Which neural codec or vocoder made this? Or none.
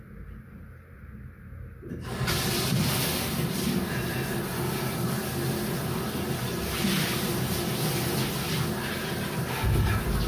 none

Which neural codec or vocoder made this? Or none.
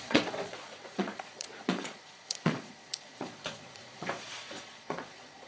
vocoder, Vocos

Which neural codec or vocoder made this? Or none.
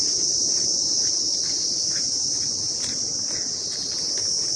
none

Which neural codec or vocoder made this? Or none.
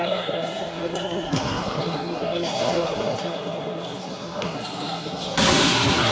codec, SNAC